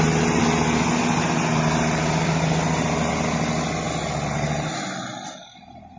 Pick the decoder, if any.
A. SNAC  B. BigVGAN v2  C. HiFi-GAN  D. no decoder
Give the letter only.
D